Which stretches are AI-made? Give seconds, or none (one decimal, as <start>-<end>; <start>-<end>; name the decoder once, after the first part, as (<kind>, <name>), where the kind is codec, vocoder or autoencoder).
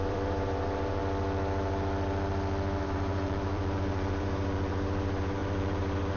0.0-1.0 (vocoder, BigVGAN v2); 2.8-6.2